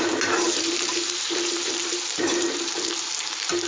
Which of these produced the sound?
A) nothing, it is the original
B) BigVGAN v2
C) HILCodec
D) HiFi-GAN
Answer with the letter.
B